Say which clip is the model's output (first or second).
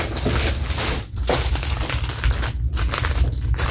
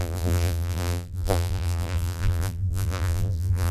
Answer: second